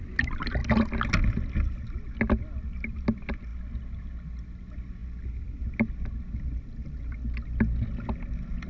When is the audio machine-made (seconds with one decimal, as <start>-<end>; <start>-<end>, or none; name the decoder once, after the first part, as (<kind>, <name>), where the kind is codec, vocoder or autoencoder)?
none